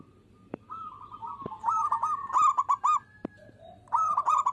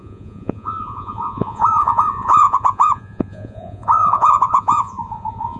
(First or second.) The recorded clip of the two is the first